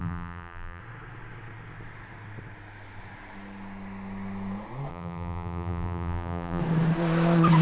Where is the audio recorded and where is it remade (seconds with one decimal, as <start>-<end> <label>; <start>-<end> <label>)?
0.0-0.8 remade; 0.8-4.9 recorded; 4.9-6.6 remade; 6.6-7.6 recorded